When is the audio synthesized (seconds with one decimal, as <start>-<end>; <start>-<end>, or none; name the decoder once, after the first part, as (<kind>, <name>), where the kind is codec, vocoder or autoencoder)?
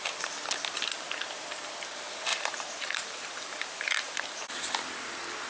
2.3-4.1 (vocoder, BigVGAN v2)